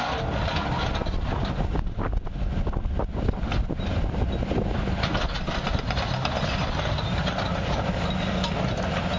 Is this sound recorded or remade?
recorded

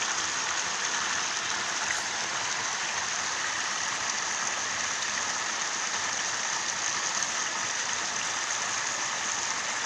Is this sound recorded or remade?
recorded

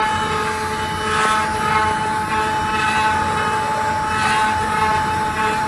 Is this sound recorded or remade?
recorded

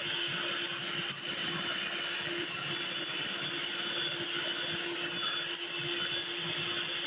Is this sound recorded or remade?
recorded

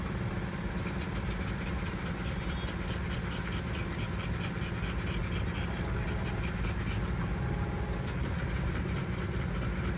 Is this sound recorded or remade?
recorded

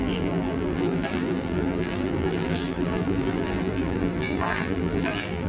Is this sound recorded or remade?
remade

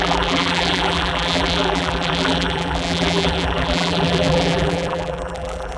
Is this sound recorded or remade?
remade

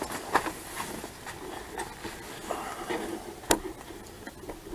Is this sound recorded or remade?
recorded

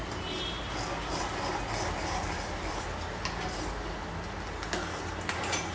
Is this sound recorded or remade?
recorded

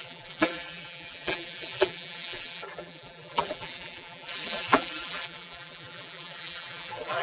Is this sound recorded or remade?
remade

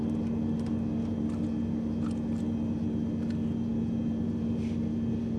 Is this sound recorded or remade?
remade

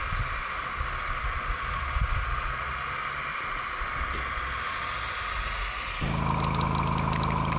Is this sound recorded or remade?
recorded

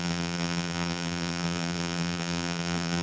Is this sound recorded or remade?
remade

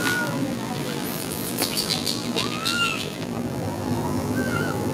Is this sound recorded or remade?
remade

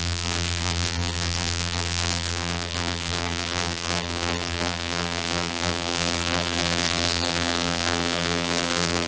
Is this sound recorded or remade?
remade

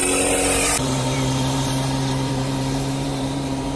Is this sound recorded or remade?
remade